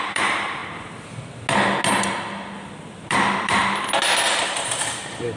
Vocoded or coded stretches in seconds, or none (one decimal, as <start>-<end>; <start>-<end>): 0.0-0.6; 2.7-3.6; 4.3-5.4